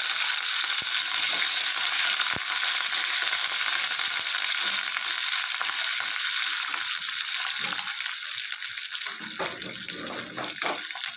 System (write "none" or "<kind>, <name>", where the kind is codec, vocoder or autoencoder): none